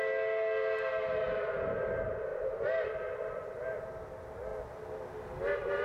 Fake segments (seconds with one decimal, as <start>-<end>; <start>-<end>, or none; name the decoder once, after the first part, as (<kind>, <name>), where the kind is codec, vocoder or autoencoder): 2.3-2.9 (vocoder, BigVGAN v2)